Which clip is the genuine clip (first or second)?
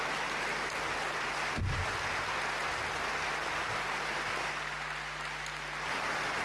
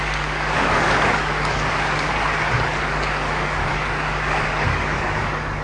first